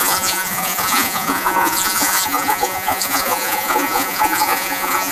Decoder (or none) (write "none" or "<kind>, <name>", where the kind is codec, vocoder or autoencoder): vocoder, Vocos